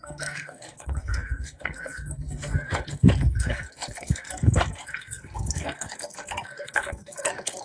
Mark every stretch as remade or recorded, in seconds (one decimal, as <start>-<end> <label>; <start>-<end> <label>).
0.0-7.6 remade